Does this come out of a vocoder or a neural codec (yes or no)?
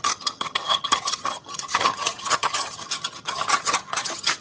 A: yes